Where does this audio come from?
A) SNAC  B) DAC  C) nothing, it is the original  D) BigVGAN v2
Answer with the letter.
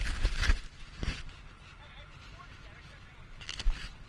D